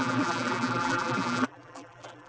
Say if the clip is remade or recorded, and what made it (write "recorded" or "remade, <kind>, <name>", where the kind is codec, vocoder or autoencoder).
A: remade, vocoder, BigVGAN v2